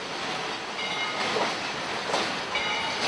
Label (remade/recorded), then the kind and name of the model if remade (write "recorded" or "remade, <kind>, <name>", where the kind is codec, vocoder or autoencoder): recorded